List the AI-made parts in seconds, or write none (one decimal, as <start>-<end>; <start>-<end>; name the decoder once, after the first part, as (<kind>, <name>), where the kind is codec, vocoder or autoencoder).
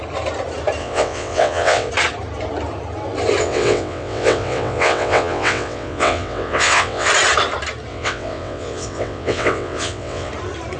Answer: 0.8-1.9 (vocoder, WaveNeXt); 3.4-7.1; 7.9-10.3